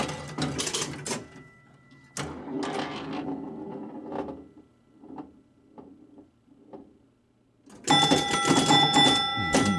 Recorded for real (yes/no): yes